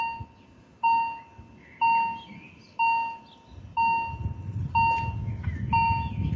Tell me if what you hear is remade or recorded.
recorded